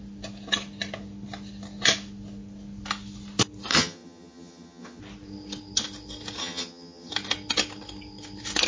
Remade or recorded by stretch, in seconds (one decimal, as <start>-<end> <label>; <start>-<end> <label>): 0.0-3.7 recorded; 3.7-5.0 remade; 5.0-6.4 recorded; 6.4-7.1 remade; 7.1-8.7 recorded